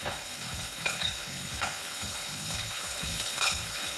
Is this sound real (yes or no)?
no